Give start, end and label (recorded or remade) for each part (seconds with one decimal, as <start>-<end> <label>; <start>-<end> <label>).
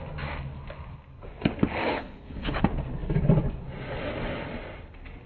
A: 0.0-1.8 recorded; 1.8-2.6 remade; 2.6-5.3 recorded